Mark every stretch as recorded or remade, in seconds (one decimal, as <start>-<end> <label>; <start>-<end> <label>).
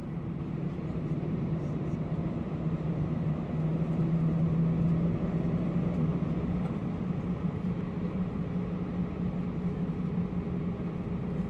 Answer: 0.0-4.2 remade; 4.2-6.8 recorded; 6.8-8.4 remade; 8.4-11.5 recorded